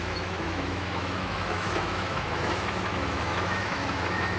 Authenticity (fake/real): fake